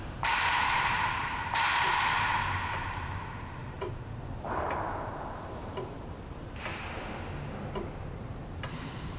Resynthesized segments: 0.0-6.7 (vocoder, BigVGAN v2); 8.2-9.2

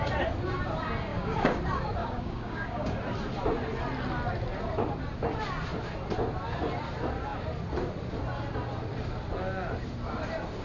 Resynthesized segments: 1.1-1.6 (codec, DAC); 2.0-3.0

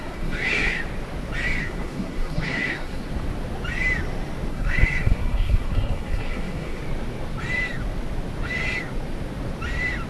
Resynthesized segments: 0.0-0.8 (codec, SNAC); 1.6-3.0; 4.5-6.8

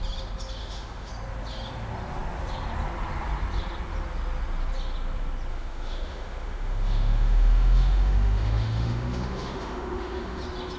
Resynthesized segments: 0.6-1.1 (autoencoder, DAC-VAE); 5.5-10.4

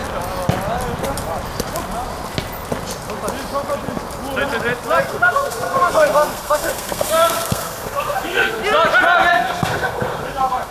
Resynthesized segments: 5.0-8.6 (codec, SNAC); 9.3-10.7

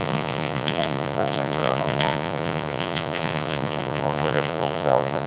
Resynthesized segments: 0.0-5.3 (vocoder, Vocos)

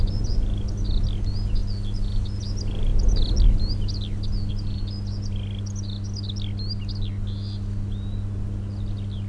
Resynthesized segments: none